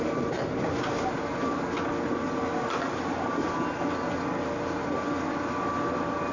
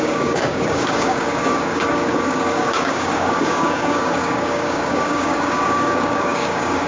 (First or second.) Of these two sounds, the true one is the first